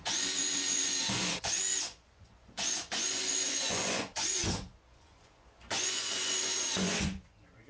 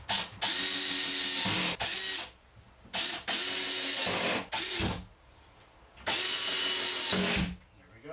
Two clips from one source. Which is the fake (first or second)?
first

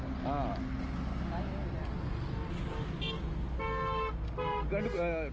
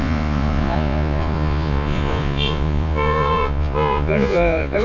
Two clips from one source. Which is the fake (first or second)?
second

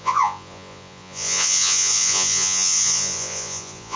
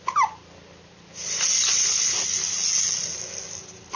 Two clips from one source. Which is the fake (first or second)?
first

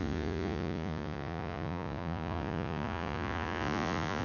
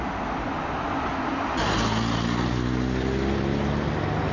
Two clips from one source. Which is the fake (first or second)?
first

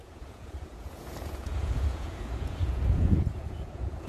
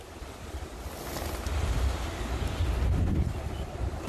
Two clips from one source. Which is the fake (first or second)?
first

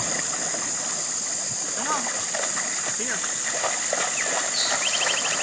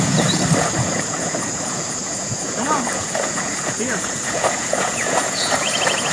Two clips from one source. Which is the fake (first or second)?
second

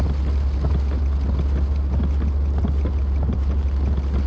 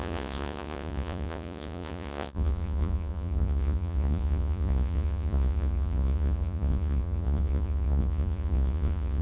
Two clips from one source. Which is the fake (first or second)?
second